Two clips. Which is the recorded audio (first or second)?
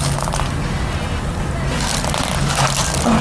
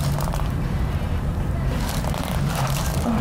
first